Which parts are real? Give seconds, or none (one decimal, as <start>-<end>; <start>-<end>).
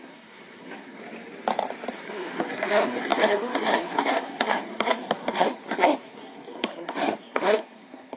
1.0-1.9